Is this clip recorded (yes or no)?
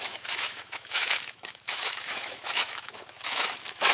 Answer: no